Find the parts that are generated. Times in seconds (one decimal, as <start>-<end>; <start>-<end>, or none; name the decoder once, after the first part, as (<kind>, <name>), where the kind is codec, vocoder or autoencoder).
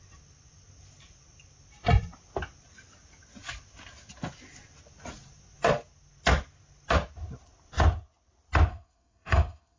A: 8.7-9.8 (codec, SNAC)